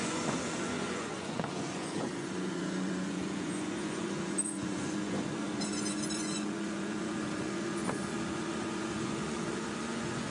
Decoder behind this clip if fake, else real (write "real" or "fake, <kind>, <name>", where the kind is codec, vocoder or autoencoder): fake, vocoder, Vocos